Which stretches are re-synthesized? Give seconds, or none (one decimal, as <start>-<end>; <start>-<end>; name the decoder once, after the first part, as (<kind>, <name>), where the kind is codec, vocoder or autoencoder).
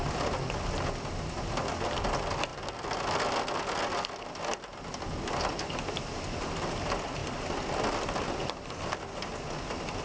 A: none